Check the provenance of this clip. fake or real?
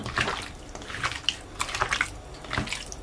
real